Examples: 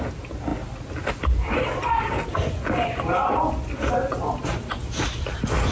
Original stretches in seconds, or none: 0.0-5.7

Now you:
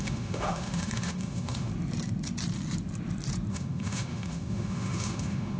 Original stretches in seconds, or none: 1.7-3.5

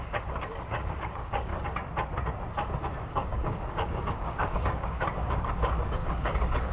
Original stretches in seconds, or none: 1.5-2.8

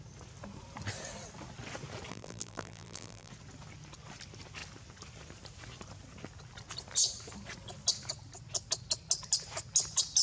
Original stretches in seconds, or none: 0.0-2.1; 3.3-10.2